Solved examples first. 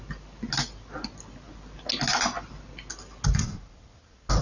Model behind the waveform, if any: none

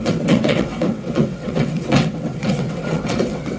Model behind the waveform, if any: vocoder, WaveNeXt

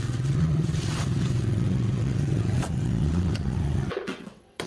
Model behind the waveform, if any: vocoder, WaveNeXt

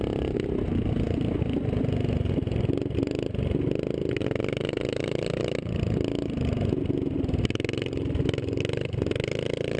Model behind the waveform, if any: none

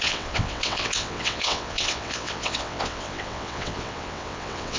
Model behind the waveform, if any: vocoder, WaveNeXt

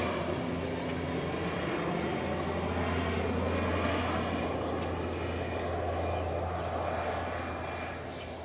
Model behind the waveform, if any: none